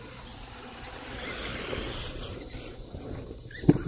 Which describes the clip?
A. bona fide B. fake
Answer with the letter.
A